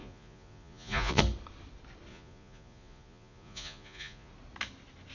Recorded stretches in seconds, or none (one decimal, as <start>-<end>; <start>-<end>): 1.2-2.1; 4.3-5.1